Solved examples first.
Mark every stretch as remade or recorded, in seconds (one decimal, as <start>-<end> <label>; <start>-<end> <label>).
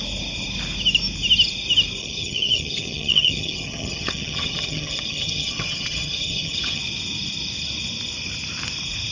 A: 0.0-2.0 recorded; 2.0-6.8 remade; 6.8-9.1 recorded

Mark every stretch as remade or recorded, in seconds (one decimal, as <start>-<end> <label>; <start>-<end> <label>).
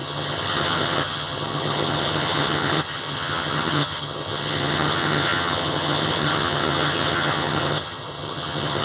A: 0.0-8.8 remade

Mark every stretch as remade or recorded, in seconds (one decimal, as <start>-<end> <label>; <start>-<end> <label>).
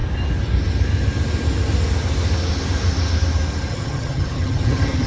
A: 0.0-3.7 recorded; 3.7-5.1 remade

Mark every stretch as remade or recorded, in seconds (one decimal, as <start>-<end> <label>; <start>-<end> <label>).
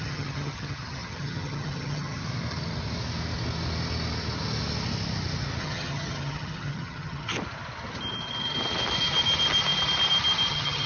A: 0.0-2.2 remade; 2.2-5.6 recorded; 5.6-7.3 remade; 7.3-10.5 recorded; 10.5-10.9 remade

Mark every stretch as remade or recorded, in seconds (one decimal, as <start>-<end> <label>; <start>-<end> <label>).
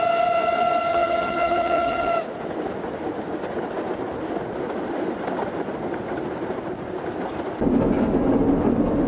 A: 0.0-0.9 recorded; 0.9-2.1 remade; 2.1-9.1 recorded